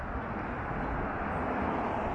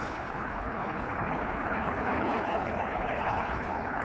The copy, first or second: second